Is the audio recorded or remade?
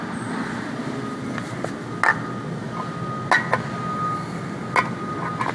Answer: recorded